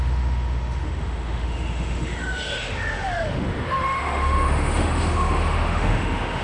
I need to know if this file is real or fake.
fake